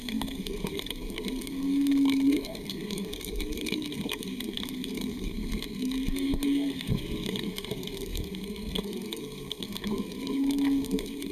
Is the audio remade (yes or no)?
yes